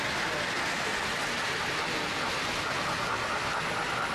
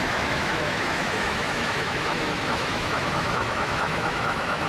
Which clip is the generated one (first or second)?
second